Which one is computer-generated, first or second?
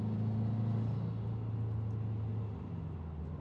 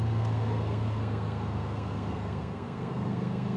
second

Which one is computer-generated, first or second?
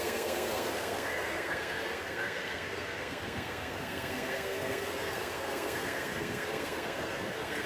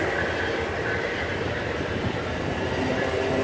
first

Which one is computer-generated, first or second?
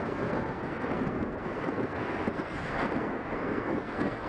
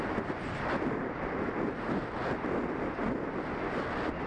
first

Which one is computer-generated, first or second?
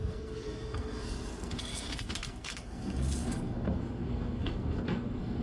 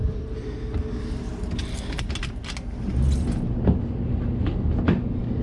first